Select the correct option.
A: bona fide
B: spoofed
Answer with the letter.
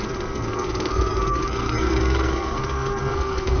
B